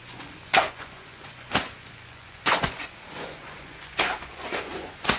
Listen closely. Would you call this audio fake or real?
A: fake